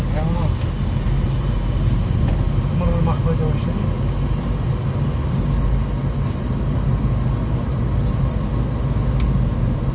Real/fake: real